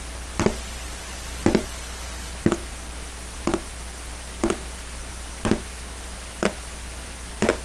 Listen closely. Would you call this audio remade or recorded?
recorded